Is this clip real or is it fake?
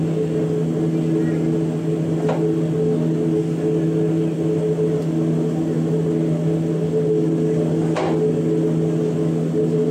real